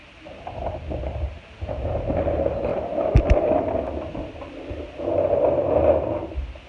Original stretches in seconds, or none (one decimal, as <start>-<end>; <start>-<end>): 3.8-6.7